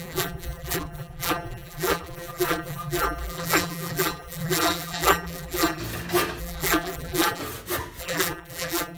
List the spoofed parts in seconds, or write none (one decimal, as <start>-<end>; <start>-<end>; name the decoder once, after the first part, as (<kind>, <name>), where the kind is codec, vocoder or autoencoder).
0.0-5.8 (vocoder, BigVGAN v2); 6.4-7.4; 8.0-9.0